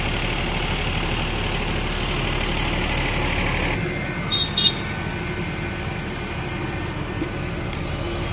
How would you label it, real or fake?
real